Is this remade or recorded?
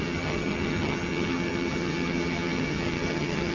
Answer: remade